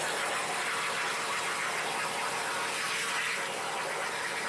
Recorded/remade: recorded